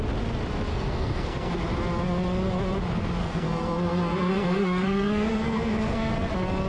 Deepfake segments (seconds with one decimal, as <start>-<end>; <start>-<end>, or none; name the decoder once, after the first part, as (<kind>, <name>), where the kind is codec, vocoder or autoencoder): 0.7-1.5 (codec, SNAC); 3.2-6.1